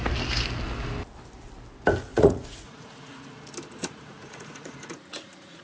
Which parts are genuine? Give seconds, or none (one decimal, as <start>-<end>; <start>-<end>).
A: 0.0-2.1; 3.3-3.8